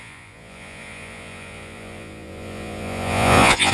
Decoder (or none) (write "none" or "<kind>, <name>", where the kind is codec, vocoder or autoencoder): vocoder, Vocos